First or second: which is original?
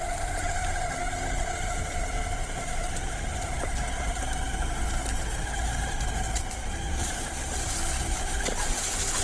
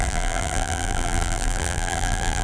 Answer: first